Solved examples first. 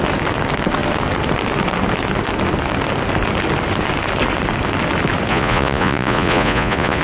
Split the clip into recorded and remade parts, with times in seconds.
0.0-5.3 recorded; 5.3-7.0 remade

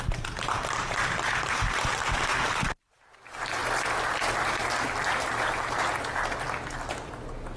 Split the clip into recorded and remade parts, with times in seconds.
0.0-3.6 remade; 3.6-7.6 recorded

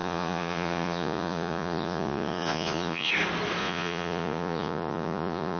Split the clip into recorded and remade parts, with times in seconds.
0.0-3.1 remade; 3.1-3.6 recorded; 3.6-5.6 remade

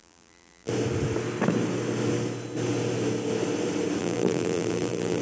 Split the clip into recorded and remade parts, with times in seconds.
0.0-0.7 remade; 0.7-4.0 recorded; 4.0-5.2 remade